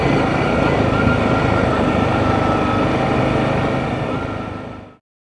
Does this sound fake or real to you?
real